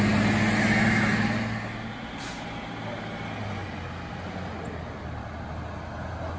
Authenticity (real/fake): real